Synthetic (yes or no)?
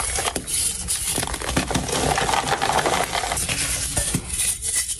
no